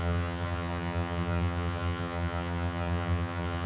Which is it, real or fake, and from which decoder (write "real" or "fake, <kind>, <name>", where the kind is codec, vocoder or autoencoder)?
fake, vocoder, HiFi-GAN